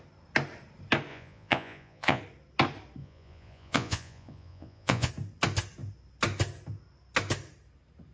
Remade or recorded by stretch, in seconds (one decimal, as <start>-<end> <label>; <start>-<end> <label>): 0.0-1.1 recorded; 1.1-2.2 remade; 2.2-3.0 recorded; 3.0-5.1 remade; 5.1-8.1 recorded